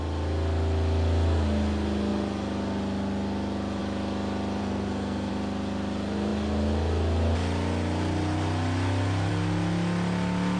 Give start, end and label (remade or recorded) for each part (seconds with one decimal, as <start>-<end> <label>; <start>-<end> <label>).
0.0-4.6 recorded; 4.6-5.3 remade; 5.3-10.6 recorded